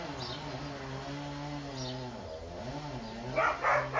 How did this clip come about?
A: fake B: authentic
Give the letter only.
B